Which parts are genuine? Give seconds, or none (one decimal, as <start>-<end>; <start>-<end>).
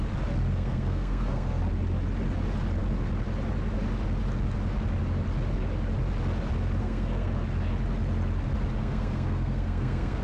0.0-0.5; 1.6-6.8; 7.3-8.8